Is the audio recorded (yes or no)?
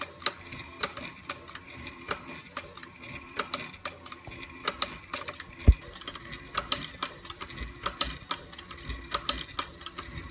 yes